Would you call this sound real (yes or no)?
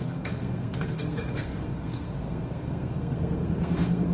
no